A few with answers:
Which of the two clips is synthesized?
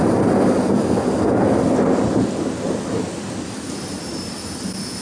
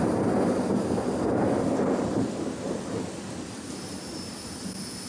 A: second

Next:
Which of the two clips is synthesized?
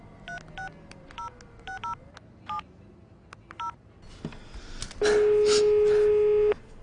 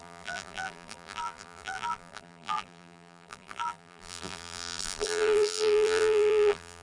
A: second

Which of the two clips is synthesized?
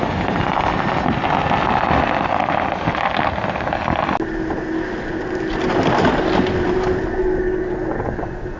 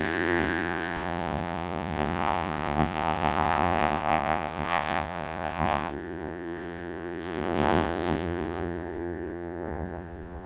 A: second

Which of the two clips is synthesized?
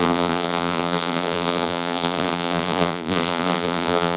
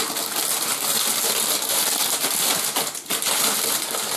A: first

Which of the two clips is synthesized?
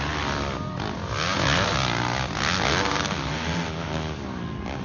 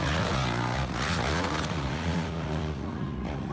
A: second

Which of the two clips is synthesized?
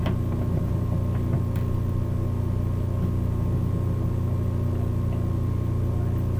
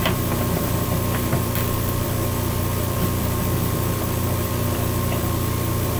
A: second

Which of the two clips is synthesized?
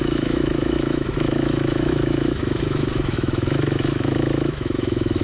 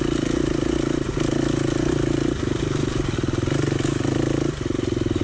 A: first